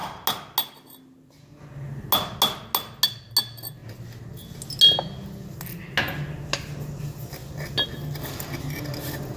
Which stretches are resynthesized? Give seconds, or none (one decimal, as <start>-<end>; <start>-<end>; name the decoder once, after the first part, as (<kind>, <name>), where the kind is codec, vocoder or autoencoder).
none